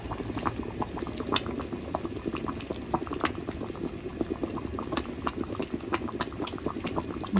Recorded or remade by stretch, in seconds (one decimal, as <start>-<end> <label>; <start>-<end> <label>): 0.0-7.4 recorded